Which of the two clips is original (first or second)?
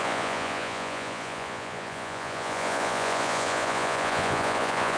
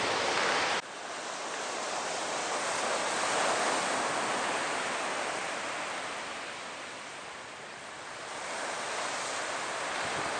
second